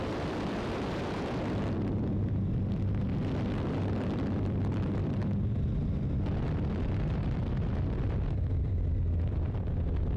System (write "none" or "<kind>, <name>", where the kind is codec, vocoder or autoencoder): vocoder, BigVGAN v2